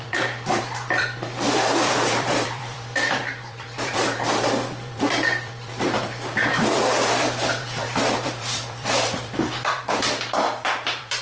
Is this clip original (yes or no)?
no